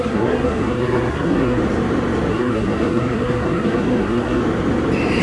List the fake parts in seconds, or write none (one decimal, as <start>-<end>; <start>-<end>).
0.0-1.6; 2.3-4.4